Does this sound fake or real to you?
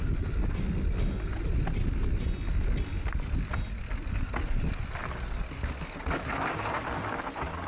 real